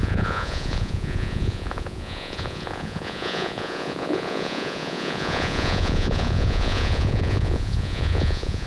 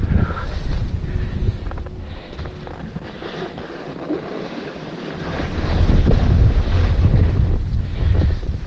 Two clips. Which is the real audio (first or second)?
second